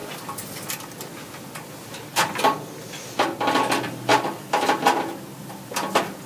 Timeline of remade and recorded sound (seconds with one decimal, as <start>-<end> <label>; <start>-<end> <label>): 0.0-2.1 recorded; 2.1-2.7 remade; 2.7-4.1 recorded; 4.1-5.0 remade; 5.0-5.4 recorded; 5.4-6.3 remade